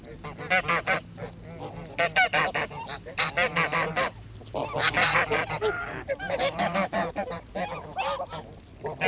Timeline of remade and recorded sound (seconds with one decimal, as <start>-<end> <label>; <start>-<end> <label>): 0.0-5.9 recorded; 5.9-7.5 remade; 7.5-9.1 recorded